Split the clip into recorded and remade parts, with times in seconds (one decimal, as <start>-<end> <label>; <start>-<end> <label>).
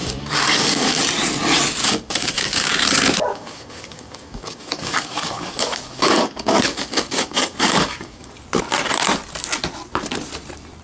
0.0-1.0 remade; 1.0-1.8 recorded; 1.8-2.7 remade; 2.7-3.3 recorded; 3.3-8.3 remade; 8.3-10.8 recorded